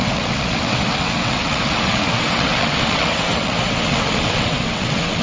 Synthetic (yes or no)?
yes